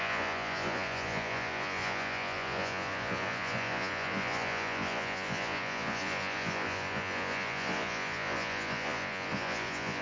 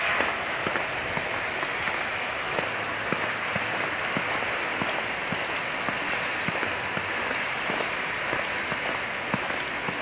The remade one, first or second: first